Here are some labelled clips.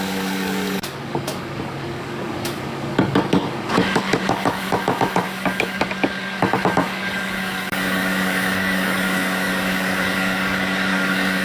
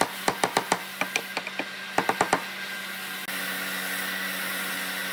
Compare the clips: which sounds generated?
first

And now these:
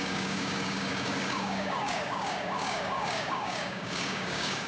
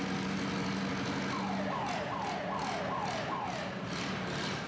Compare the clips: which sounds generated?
first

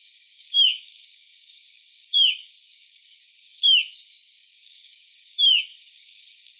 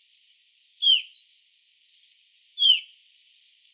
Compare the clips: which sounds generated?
first